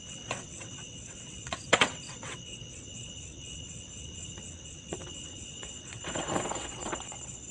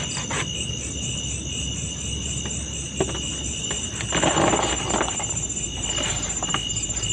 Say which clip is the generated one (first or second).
first